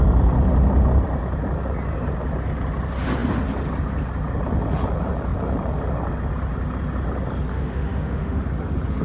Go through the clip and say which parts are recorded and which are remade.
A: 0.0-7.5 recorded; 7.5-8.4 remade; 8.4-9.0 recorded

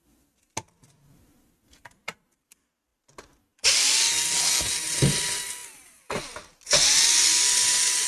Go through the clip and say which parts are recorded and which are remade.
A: 0.0-8.1 recorded

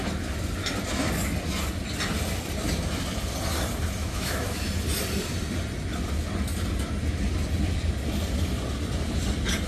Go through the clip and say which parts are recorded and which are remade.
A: 0.0-4.0 recorded; 4.0-4.6 remade; 4.6-9.7 recorded

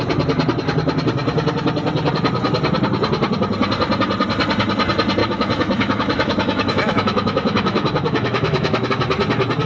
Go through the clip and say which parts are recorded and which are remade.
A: 0.0-5.2 recorded; 5.2-8.9 remade; 8.9-9.7 recorded